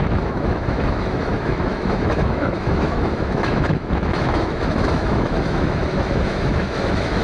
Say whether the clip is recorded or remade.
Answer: remade